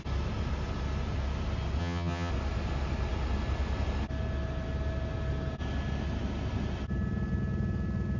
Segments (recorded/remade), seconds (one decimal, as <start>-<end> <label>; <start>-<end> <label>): 0.0-1.8 recorded; 1.8-2.3 remade; 2.3-8.2 recorded